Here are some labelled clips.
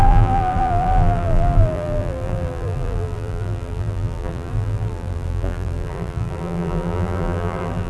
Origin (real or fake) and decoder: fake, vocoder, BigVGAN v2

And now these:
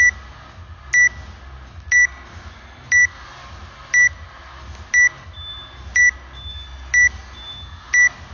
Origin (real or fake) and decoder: real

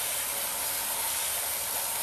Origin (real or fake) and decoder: fake, vocoder, BigVGAN v2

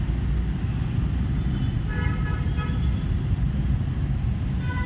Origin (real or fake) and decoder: real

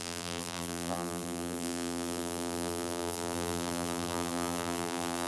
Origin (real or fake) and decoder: fake, vocoder, BigVGAN v2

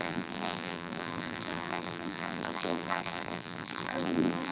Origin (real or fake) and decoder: fake, vocoder, BigVGAN v2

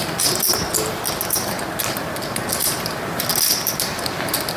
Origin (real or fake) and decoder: real